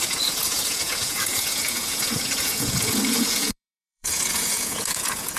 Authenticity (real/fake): fake